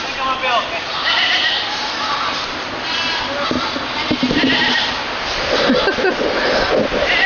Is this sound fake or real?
real